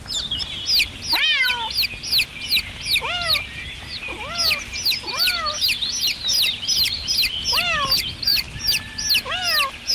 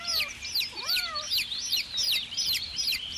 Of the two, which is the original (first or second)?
first